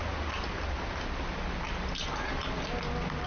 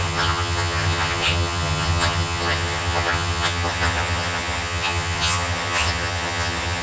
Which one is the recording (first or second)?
first